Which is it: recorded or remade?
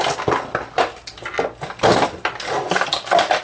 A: recorded